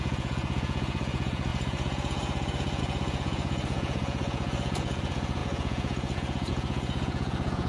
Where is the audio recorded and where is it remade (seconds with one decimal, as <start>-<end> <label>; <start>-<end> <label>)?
0.0-7.7 remade

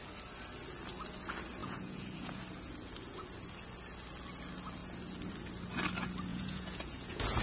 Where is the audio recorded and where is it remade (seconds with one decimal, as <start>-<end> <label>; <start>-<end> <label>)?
0.0-1.6 recorded; 1.6-2.4 remade; 2.4-6.3 recorded; 6.3-7.4 remade

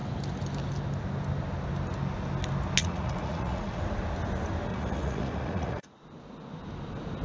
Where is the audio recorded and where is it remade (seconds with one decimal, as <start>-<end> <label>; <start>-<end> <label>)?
0.0-2.8 recorded; 2.8-3.8 remade; 3.8-4.7 recorded; 4.7-5.9 remade; 5.9-7.2 recorded

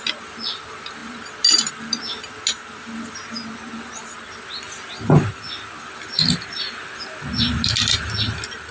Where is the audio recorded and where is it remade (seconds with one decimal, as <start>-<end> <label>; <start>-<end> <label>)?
0.0-8.7 recorded